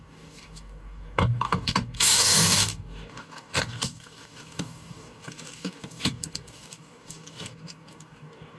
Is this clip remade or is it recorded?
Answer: remade